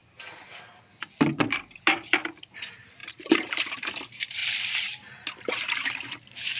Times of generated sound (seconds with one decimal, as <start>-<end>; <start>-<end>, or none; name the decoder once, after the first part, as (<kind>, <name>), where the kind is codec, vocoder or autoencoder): 1.5-6.6 (vocoder, BigVGAN v2)